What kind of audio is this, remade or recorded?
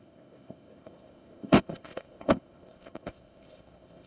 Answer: remade